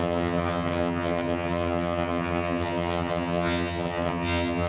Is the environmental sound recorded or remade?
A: remade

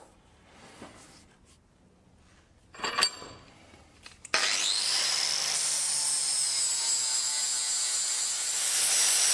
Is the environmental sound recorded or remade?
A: recorded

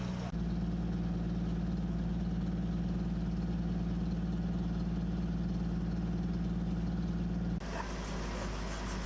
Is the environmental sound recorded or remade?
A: recorded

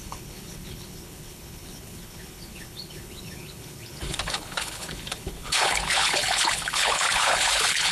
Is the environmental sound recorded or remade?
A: remade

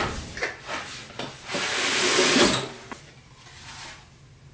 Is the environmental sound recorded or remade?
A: recorded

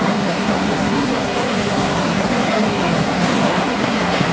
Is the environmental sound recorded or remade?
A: remade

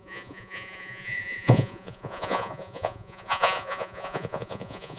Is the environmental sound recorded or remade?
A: remade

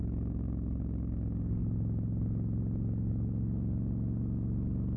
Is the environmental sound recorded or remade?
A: recorded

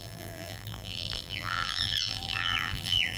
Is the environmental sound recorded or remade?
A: remade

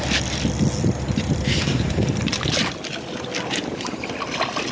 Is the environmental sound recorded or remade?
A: recorded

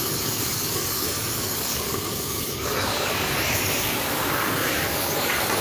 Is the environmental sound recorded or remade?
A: remade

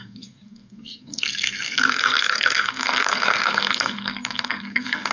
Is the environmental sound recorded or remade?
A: remade